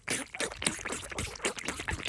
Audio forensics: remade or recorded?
recorded